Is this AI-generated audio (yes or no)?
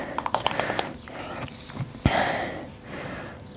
no